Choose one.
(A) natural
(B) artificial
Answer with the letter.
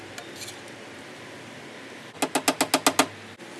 A